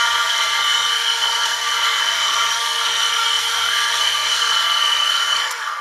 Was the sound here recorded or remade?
remade